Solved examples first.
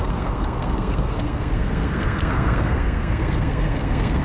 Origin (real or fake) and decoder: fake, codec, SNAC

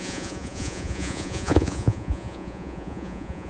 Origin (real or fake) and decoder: fake, vocoder, Vocos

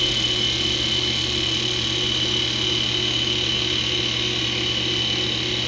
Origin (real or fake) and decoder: real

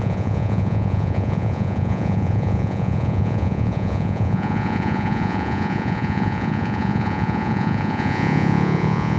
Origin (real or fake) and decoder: fake, vocoder, Vocos